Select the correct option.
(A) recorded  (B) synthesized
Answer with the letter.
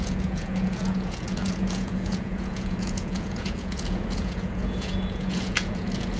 B